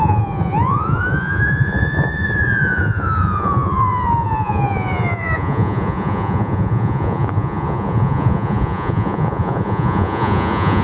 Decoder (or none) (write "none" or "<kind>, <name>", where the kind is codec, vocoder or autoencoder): vocoder, Vocos